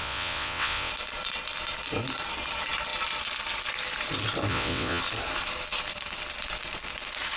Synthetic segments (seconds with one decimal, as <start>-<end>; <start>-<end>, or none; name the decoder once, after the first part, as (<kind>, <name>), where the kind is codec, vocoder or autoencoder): 0.0-0.9 (vocoder, WaveNeXt); 4.5-5.0